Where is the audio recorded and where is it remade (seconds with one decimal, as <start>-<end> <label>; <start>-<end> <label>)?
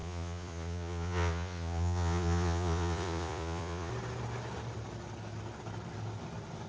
0.0-3.9 remade; 3.9-6.7 recorded